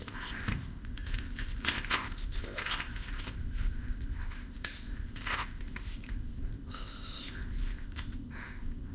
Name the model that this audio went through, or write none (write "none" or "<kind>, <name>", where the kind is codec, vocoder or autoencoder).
codec, ZipCodec